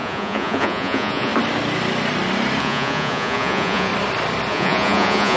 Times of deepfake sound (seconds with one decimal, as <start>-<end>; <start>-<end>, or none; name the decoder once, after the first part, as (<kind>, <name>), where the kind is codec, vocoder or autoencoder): 0.0-1.3 (vocoder, Vocos); 2.6-3.9; 4.5-5.4